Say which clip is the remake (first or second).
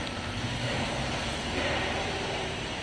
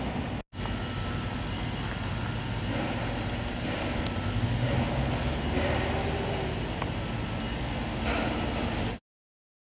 first